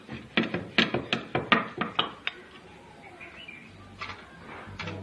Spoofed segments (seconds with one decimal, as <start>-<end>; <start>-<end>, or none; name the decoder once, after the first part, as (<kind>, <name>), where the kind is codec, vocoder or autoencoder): none